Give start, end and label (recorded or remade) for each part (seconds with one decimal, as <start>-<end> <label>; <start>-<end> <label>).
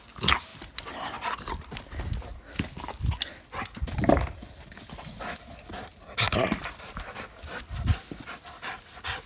0.0-9.3 recorded